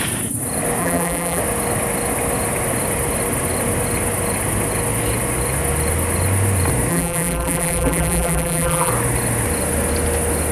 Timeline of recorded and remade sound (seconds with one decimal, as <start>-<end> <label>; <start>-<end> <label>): 0.0-0.8 recorded; 0.8-1.4 remade; 1.4-6.9 recorded; 6.9-8.9 remade; 8.9-10.5 recorded